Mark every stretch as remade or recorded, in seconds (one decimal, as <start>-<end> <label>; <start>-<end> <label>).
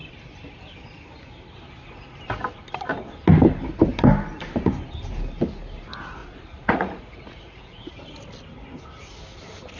0.0-6.2 recorded; 6.2-7.9 remade; 7.9-9.8 recorded